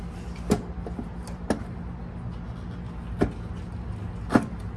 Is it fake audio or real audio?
real